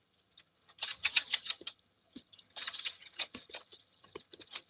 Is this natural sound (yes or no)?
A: no